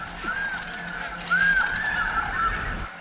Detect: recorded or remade recorded